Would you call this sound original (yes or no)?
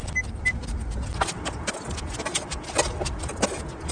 yes